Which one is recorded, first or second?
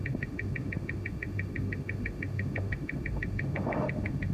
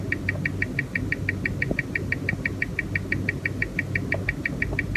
second